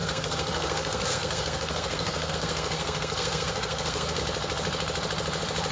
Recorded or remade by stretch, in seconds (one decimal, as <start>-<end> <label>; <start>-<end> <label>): 0.0-4.2 remade; 4.2-5.7 recorded